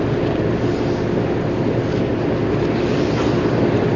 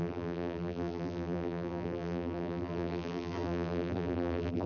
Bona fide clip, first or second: first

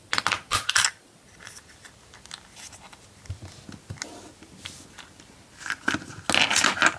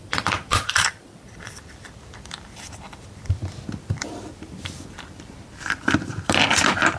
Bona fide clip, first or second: first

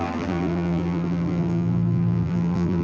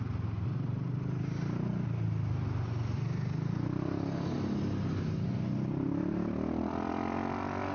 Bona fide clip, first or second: second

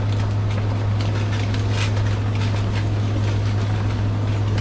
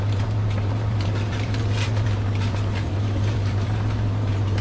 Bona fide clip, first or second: first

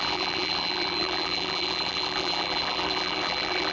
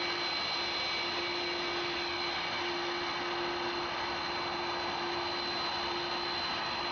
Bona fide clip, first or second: second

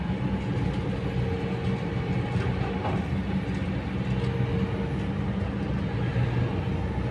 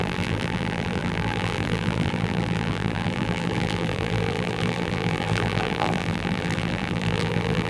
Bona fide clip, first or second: first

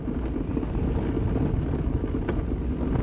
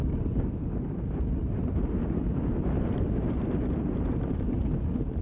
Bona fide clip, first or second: first